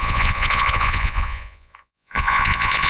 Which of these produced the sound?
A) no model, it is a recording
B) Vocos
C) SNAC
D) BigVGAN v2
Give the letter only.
B